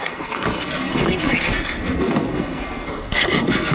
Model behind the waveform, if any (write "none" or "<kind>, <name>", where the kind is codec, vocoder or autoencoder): codec, SNAC